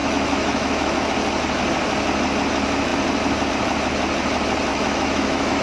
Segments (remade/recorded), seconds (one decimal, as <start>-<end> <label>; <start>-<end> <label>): 0.0-1.1 remade; 1.1-4.7 recorded; 4.7-5.6 remade